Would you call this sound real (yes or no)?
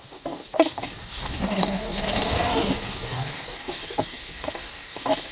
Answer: no